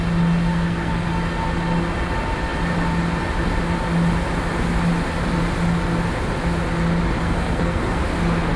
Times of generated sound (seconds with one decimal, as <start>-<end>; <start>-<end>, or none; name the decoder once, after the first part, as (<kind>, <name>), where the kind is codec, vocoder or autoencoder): 0.5-1.1 (codec, SNAC); 7.2-8.0